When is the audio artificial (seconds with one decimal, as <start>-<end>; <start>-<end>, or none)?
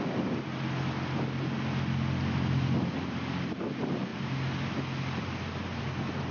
none